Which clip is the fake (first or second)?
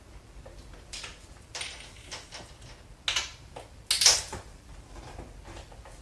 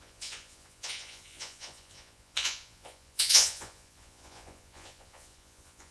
second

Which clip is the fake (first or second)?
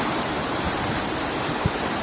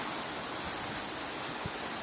first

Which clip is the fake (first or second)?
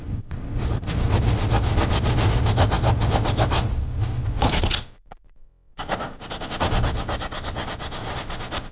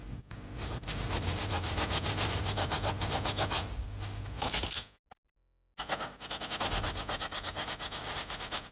first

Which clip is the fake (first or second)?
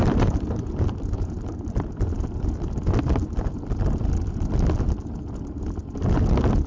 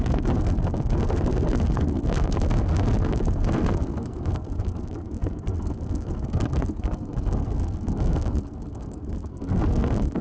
second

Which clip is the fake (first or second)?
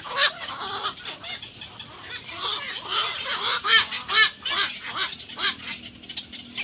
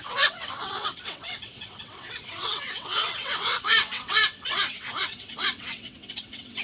second